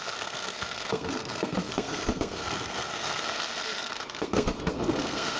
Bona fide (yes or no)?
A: no